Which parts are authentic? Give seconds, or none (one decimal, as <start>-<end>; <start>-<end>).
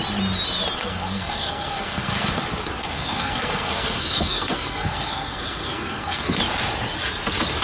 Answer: 0.0-0.8; 2.4-2.8; 6.4-7.6